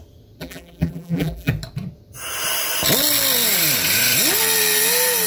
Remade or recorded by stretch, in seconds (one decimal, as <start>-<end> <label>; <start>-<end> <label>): 0.0-0.4 recorded; 0.4-1.5 remade; 1.5-5.3 recorded